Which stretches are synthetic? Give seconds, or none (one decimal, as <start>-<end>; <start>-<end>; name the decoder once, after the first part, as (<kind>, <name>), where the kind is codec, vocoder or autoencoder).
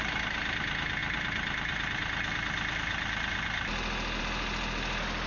none